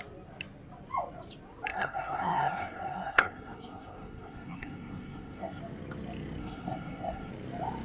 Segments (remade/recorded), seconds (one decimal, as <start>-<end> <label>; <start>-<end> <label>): 0.0-1.7 recorded; 1.7-5.6 remade; 5.6-6.4 recorded; 6.4-7.3 remade; 7.3-7.8 recorded